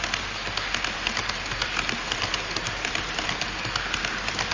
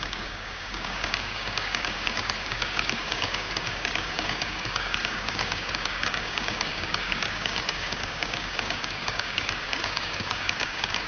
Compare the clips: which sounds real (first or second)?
first